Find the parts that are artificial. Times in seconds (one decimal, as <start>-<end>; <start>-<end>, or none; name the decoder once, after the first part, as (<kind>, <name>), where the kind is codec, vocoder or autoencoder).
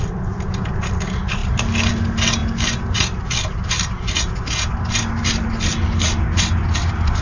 none